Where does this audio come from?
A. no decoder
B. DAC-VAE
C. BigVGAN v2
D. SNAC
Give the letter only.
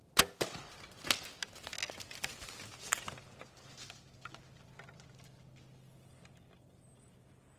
A